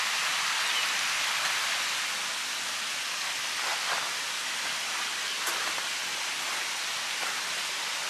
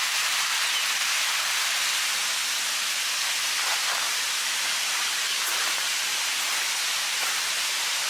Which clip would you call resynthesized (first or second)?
second